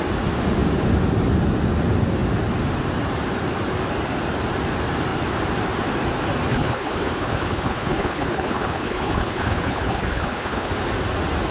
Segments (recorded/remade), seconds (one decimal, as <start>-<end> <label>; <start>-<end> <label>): 0.0-6.5 recorded; 6.5-10.7 remade; 10.7-11.5 recorded